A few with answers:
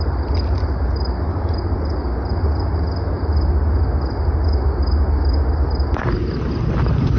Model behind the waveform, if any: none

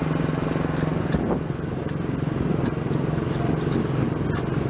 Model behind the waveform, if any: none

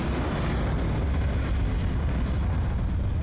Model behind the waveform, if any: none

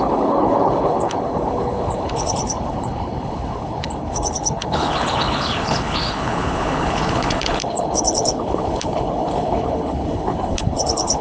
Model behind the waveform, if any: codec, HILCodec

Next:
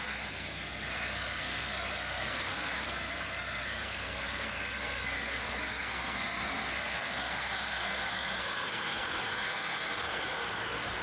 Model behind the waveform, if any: codec, SNAC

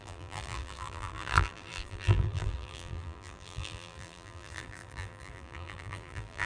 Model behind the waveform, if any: vocoder, BigVGAN v2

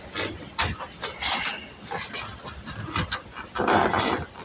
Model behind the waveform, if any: none